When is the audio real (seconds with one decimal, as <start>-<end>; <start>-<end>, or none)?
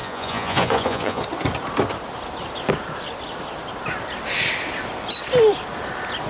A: 1.2-6.3